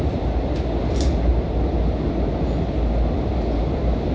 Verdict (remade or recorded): recorded